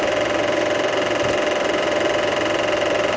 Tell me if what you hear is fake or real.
fake